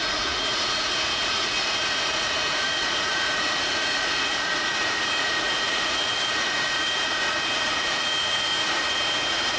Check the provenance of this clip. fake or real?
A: fake